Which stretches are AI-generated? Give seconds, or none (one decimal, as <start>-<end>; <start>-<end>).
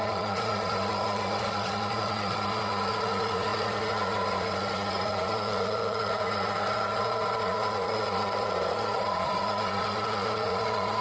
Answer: 0.0-11.0